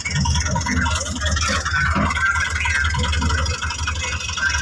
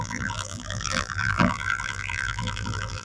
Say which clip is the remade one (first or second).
second